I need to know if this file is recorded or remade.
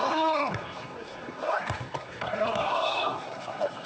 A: remade